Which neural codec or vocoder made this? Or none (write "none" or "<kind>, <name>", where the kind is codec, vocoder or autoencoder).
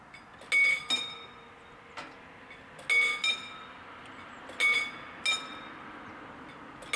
none